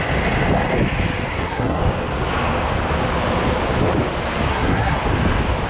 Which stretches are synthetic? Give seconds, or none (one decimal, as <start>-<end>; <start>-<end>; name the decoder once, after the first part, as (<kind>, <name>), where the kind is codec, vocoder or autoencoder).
1.3-1.8 (codec, SNAC); 4.5-5.0